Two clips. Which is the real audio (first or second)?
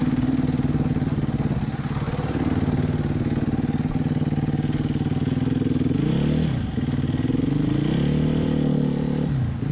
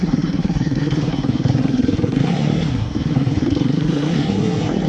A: first